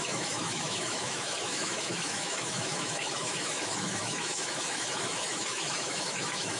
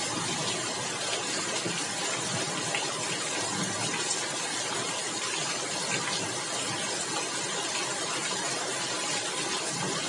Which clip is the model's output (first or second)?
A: first